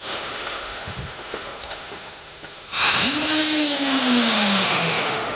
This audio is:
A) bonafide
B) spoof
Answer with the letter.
B